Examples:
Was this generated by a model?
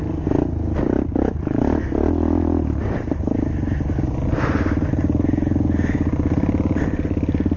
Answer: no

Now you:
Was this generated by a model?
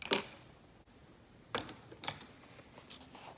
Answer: no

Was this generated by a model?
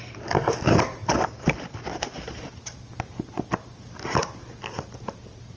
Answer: no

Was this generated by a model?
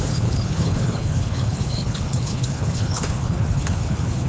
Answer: yes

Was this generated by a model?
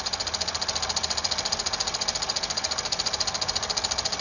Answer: no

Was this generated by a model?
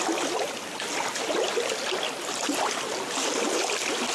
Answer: no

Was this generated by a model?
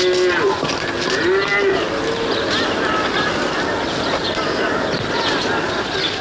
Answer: no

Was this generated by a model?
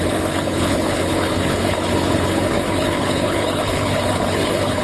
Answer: yes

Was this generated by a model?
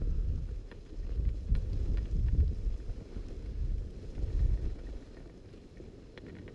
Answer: no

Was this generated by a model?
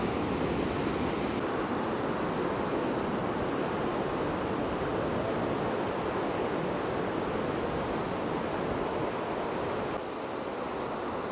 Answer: no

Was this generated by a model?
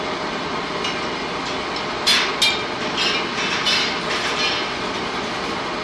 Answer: no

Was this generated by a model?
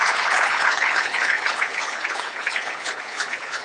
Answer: yes